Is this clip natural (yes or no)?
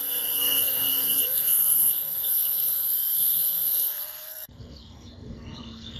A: no